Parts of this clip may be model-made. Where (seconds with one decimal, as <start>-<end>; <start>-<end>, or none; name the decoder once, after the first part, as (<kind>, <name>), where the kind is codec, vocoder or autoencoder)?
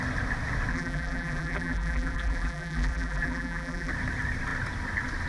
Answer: 0.7-3.9 (vocoder, BigVGAN v2)